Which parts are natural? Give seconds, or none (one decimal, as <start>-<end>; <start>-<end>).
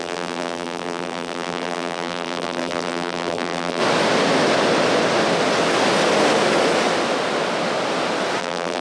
3.8-8.4